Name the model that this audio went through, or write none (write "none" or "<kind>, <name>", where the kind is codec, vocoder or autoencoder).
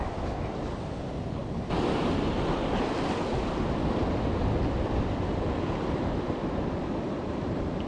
none